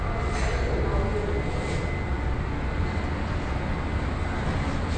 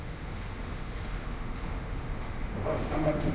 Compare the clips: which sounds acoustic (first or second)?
first